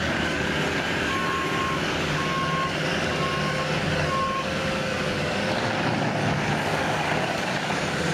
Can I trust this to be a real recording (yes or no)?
no